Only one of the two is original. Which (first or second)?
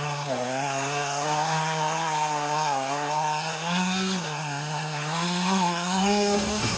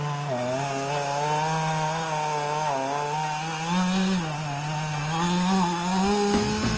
second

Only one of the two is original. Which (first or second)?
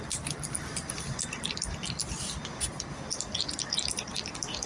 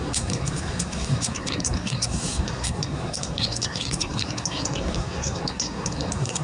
first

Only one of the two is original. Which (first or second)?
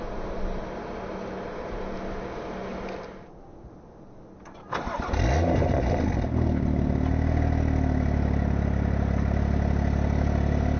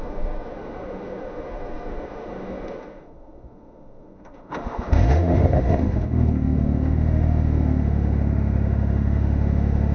first